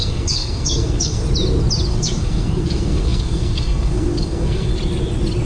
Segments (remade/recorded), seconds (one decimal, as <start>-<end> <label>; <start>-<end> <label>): 0.0-1.2 remade; 1.2-1.9 recorded; 1.9-4.7 remade; 4.7-5.5 recorded